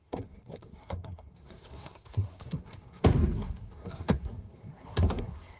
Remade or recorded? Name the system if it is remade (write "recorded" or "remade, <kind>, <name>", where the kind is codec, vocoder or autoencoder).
remade, codec, SNAC